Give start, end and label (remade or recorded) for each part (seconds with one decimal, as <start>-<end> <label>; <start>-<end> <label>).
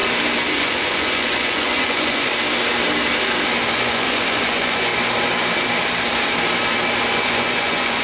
0.0-0.5 recorded; 0.5-2.3 remade; 2.3-3.7 recorded; 3.7-4.9 remade; 4.9-7.1 recorded; 7.1-8.0 remade